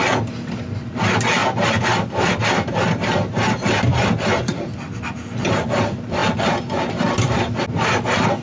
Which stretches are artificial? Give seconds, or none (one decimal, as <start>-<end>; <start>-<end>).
none